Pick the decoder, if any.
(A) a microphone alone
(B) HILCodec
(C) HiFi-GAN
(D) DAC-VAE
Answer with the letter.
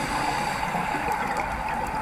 A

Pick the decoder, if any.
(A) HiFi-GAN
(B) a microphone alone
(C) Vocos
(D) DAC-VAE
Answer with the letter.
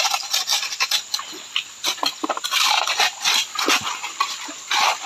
B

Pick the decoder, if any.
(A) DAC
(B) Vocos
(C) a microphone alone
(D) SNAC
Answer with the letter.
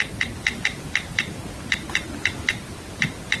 C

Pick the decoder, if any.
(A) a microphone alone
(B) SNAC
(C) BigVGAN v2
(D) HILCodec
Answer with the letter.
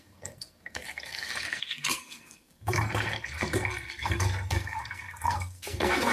B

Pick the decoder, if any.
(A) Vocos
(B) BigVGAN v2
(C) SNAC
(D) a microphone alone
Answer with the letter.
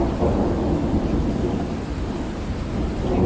D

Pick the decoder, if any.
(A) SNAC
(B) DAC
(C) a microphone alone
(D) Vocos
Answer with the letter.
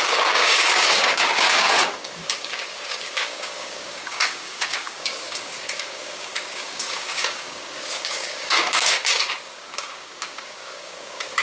B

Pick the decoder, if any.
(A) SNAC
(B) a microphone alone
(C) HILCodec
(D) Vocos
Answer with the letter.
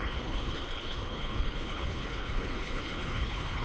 C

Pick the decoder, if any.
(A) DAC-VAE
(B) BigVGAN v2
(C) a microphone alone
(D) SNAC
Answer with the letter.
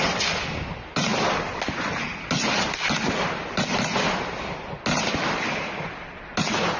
C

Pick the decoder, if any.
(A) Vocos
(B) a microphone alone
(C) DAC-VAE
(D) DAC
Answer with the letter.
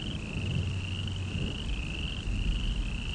B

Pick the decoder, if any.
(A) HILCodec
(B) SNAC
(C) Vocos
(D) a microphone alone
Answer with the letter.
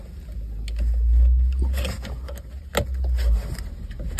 D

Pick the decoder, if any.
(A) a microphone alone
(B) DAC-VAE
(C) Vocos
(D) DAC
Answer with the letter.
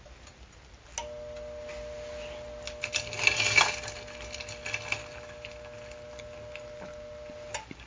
A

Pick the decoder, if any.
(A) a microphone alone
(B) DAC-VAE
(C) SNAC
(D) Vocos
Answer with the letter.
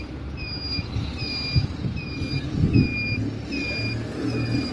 A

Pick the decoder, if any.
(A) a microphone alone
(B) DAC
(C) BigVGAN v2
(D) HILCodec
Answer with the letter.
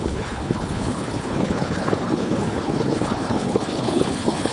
D